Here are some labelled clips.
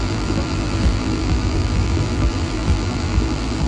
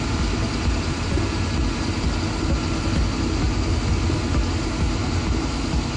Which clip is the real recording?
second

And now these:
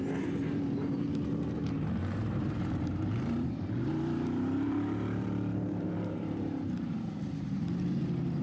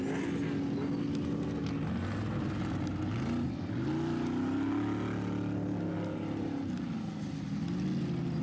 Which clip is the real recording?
second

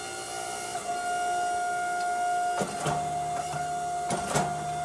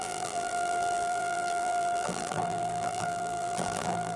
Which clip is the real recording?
first